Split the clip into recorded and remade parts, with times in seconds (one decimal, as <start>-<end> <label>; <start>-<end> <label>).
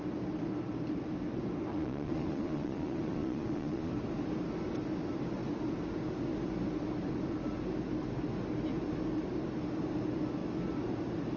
0.0-1.7 recorded; 1.7-3.9 remade; 3.9-11.4 recorded